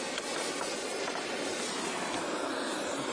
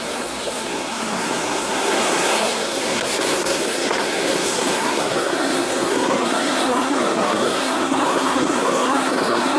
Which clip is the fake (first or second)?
second